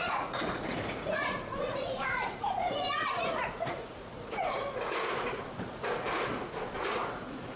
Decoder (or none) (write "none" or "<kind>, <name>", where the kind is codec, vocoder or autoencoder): vocoder, Vocos